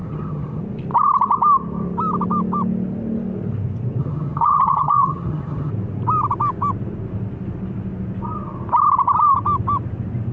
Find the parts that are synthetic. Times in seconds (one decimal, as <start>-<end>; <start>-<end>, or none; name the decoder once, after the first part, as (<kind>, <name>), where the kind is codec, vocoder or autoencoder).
0.0-0.6 (vocoder, HiFi-GAN); 4.0-5.7